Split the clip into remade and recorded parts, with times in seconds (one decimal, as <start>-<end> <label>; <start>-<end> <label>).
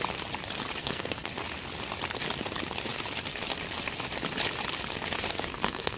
0.0-0.8 recorded; 0.8-1.3 remade; 1.3-5.3 recorded; 5.3-6.0 remade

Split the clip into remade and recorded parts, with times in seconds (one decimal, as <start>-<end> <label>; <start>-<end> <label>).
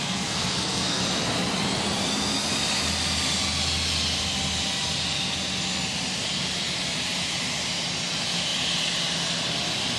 0.0-1.0 remade; 1.0-10.0 recorded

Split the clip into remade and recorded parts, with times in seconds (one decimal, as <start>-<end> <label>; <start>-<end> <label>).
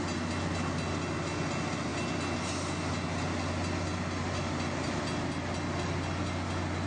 0.0-6.9 recorded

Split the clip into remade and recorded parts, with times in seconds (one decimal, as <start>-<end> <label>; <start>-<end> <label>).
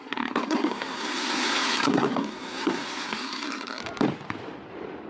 0.0-3.8 remade; 3.8-5.1 recorded